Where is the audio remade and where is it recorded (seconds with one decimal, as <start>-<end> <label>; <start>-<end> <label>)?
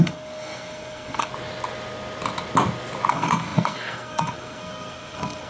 0.0-1.3 remade; 1.3-3.1 recorded; 3.1-5.5 remade